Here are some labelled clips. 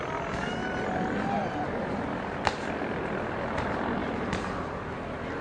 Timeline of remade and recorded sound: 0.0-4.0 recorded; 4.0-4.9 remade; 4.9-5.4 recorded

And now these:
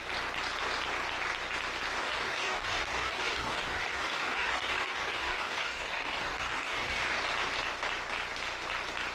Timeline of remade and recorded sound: 0.0-2.0 recorded; 2.0-7.2 remade; 7.2-9.1 recorded

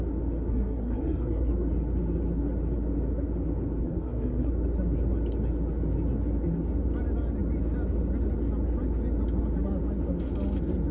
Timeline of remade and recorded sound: 0.0-0.5 recorded; 0.5-1.5 remade; 1.5-3.8 recorded; 3.8-4.5 remade; 4.5-10.9 recorded

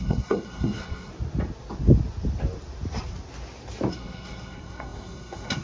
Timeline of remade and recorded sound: 0.0-1.1 remade; 1.1-3.9 recorded; 3.9-5.6 remade

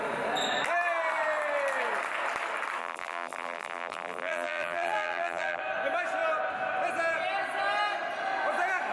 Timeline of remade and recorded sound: 0.0-2.8 recorded; 2.8-5.6 remade; 5.6-8.9 recorded